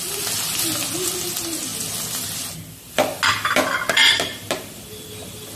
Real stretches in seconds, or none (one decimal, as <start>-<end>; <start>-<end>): 0.0-4.0; 4.7-5.6